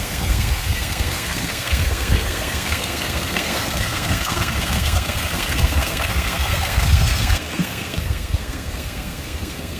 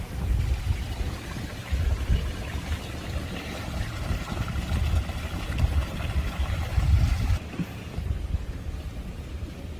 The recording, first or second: second